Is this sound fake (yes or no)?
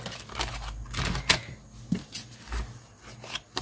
no